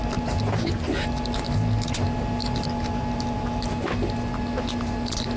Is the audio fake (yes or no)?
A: no